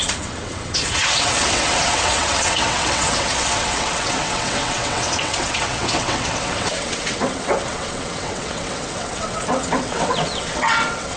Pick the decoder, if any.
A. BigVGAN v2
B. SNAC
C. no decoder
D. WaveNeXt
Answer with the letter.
D